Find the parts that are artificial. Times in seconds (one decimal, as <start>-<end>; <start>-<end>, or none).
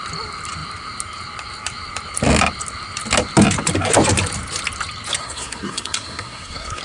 5.2-6.8